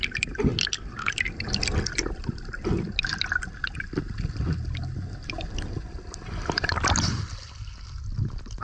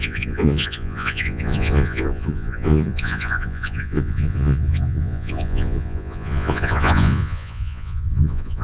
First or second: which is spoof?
second